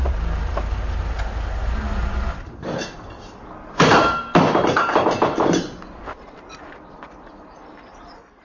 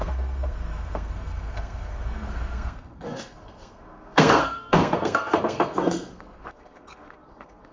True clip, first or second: first